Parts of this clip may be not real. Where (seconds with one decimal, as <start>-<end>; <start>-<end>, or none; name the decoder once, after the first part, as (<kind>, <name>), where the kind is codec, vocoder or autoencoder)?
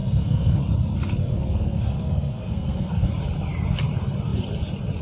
0.0-0.6 (codec, SNAC); 1.2-3.1